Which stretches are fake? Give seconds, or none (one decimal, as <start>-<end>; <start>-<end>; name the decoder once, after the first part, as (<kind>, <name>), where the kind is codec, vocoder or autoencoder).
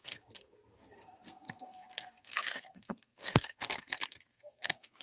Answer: 0.0-5.0 (codec, SNAC)